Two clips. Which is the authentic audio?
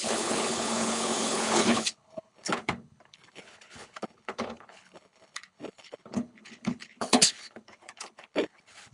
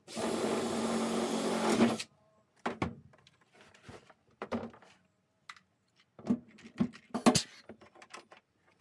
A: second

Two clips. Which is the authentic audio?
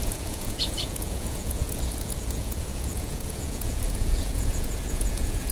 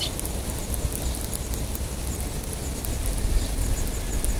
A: second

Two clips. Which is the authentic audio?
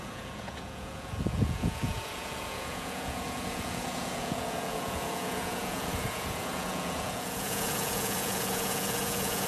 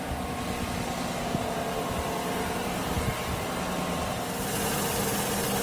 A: second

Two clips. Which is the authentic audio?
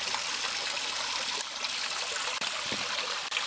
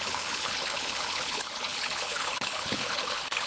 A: first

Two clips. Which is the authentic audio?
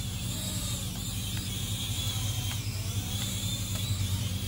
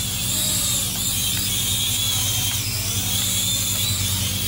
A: second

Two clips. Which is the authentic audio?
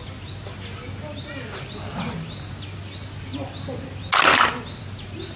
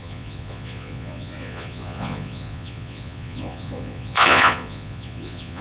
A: first